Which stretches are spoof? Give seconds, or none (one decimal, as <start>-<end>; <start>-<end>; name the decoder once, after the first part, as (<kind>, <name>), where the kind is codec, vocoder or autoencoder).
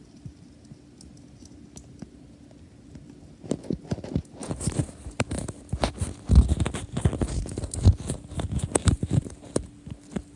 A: 8.8-9.4 (vocoder, BigVGAN v2)